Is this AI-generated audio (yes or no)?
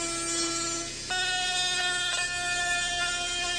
no